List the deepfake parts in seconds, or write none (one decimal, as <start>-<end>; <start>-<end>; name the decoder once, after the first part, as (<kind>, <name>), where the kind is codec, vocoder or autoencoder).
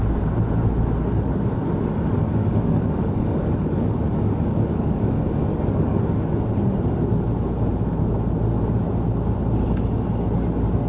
2.4-5.1 (codec, DAC); 5.5-6.0